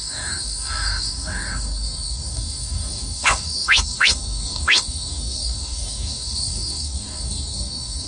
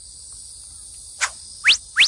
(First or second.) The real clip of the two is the second